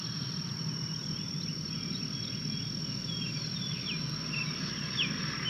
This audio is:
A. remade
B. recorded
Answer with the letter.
B